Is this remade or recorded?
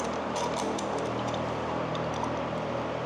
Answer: remade